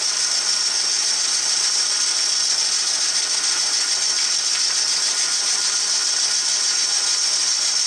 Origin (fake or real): real